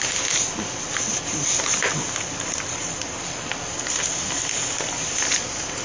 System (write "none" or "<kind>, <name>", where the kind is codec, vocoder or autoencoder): none